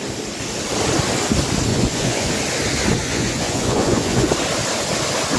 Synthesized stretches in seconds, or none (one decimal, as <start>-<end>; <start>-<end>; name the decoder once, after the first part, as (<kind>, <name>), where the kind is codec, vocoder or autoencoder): 1.7-2.3 (vocoder, Vocos); 3.0-4.3